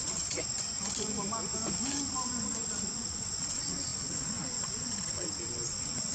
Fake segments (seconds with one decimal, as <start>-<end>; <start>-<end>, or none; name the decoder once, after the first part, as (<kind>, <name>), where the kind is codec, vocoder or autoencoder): 0.0-0.4 (vocoder, WaveNeXt); 2.9-6.1